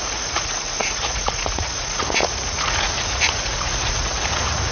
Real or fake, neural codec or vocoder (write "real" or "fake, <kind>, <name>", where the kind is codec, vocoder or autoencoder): fake, vocoder, Vocos